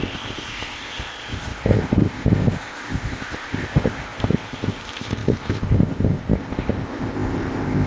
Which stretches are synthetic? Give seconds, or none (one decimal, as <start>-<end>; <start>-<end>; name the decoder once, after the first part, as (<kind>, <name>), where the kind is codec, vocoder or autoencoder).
0.0-7.9 (codec, ZipCodec)